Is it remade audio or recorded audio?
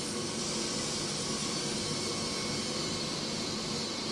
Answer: recorded